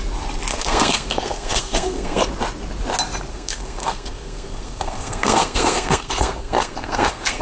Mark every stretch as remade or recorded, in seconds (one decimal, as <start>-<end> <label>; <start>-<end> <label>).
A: 0.0-0.5 recorded; 0.5-2.3 remade; 2.3-3.3 recorded; 3.3-7.4 remade